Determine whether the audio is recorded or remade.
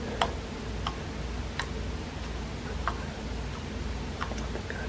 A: recorded